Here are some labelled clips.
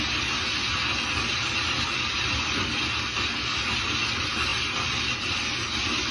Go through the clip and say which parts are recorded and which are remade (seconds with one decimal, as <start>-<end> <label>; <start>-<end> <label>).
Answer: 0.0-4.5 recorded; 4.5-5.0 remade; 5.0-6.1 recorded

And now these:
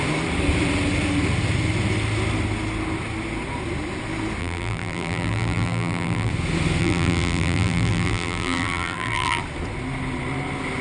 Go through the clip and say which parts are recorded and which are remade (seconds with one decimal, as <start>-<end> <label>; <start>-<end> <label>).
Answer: 0.0-4.4 recorded; 4.4-6.3 remade; 6.3-6.8 recorded; 6.8-9.4 remade; 9.4-10.8 recorded

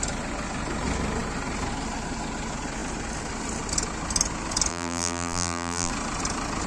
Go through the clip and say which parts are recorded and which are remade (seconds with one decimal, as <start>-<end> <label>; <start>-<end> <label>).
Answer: 0.0-4.7 recorded; 4.7-5.9 remade; 5.9-6.7 recorded